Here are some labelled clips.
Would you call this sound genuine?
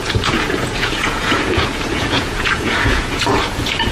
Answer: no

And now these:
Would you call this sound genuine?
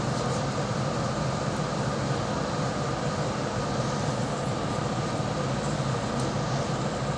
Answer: yes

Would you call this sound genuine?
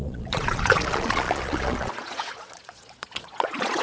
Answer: no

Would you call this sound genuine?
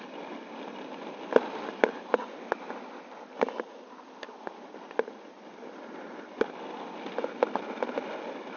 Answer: yes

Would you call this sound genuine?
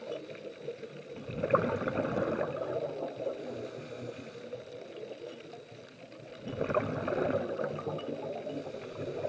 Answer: yes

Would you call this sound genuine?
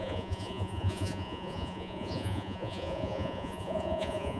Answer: no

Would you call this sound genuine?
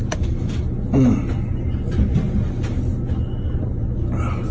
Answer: yes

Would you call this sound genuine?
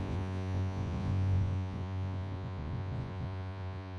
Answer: no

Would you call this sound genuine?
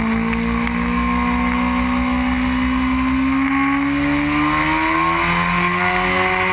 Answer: yes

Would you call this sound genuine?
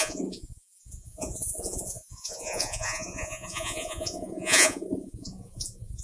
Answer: no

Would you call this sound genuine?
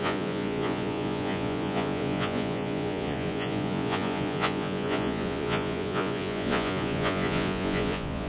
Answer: no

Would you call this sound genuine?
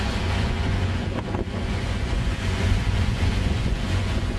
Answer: no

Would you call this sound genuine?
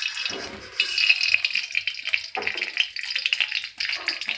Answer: yes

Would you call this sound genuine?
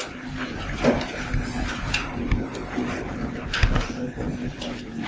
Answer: yes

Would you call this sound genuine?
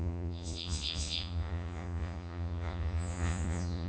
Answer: no